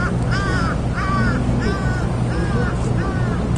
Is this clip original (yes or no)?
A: yes